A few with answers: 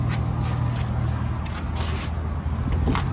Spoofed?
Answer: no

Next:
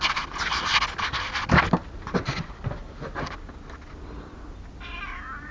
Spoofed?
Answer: no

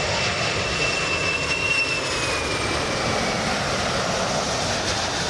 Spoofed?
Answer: no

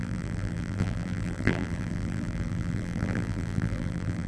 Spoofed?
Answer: yes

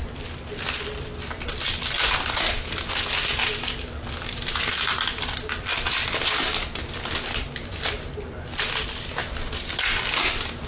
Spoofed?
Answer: no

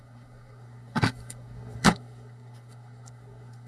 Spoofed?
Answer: yes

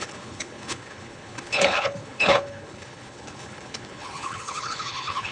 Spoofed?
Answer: yes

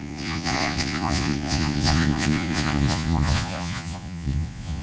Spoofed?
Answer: yes